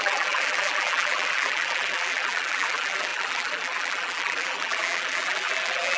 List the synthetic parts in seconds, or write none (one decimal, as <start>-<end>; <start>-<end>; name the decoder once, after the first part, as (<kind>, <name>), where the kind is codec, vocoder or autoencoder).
0.0-6.0 (vocoder, BigVGAN v2)

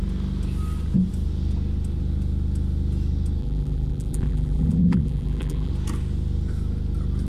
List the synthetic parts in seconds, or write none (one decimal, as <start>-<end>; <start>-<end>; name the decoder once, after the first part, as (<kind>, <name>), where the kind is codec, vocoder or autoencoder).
3.4-5.7 (vocoder, BigVGAN v2)

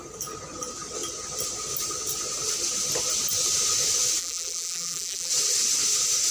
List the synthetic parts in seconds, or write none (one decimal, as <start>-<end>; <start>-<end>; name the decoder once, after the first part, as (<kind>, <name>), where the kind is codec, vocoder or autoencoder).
4.2-5.3 (vocoder, BigVGAN v2)